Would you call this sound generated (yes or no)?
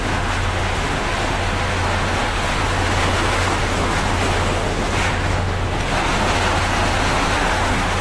yes